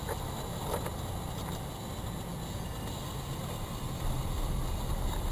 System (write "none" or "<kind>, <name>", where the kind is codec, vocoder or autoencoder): none